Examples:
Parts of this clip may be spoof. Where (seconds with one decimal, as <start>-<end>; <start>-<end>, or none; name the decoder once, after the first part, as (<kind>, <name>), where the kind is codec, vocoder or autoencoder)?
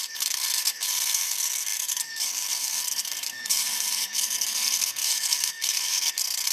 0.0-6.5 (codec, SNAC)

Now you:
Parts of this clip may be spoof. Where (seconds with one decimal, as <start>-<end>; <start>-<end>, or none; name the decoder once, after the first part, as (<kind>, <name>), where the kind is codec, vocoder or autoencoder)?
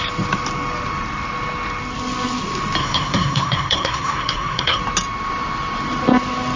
2.8-4.8 (codec, SNAC)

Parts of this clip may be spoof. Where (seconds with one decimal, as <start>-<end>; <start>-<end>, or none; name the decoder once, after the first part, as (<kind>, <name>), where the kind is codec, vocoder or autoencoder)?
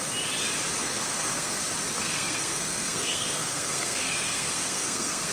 0.8-1.6 (codec, SNAC); 2.0-5.3